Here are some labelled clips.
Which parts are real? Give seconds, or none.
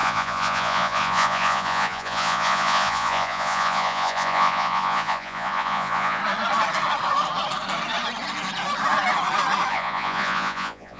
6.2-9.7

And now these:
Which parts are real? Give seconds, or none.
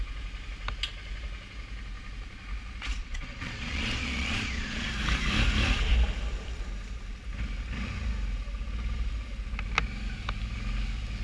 0.0-3.0; 4.9-11.2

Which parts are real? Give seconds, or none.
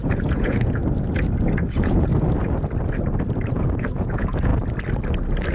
0.8-1.7; 2.1-3.5; 4.5-5.5